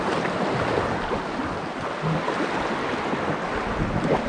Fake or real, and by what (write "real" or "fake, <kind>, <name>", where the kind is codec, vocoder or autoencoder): real